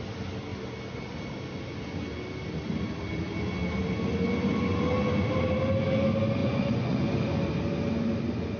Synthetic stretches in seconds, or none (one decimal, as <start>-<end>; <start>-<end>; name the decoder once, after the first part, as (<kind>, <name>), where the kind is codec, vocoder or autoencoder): 6.4-7.1 (vocoder, Vocos)